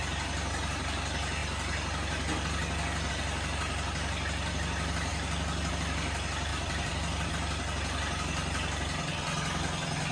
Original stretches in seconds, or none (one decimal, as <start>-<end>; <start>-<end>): 0.0-6.5; 7.3-10.1